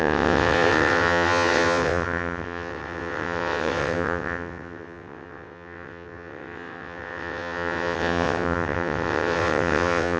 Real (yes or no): no